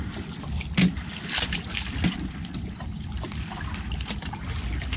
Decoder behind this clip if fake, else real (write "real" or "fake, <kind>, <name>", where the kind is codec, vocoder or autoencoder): real